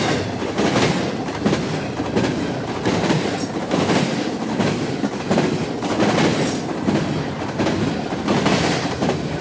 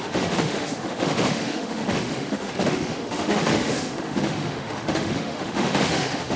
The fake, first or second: second